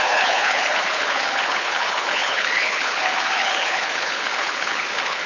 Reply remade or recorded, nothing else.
remade